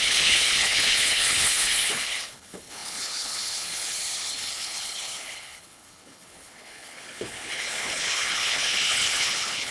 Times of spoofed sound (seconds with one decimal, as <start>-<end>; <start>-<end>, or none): 0.0-9.7